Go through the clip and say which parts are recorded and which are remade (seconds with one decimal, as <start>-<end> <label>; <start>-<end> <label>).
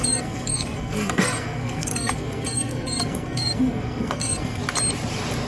0.0-4.6 remade; 4.6-5.5 recorded